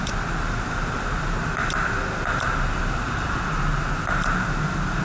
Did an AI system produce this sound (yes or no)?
no